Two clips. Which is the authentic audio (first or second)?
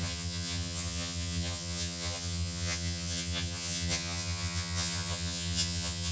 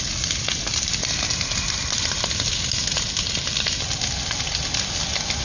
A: second